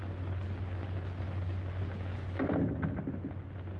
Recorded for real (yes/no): yes